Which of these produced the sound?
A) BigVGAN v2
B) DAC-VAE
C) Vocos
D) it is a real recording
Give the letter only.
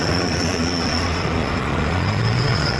C